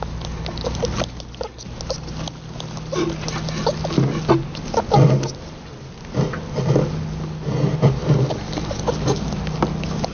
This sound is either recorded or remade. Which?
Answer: recorded